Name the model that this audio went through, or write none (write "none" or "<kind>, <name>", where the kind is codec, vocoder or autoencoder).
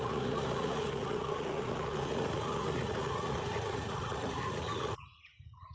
vocoder, Vocos